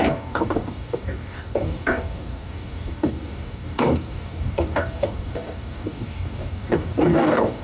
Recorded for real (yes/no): no